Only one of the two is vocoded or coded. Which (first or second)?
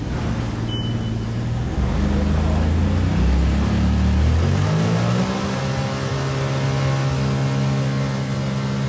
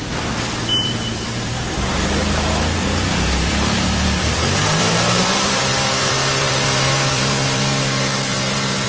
second